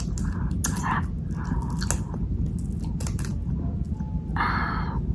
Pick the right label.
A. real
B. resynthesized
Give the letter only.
A